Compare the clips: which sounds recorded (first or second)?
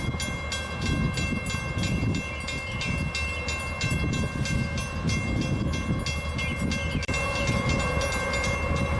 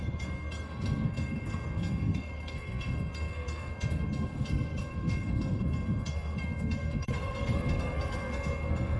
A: first